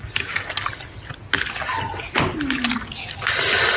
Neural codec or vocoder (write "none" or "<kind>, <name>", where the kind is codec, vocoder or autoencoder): none